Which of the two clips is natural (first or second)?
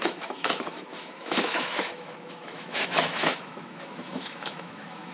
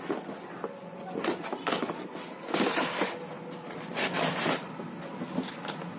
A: second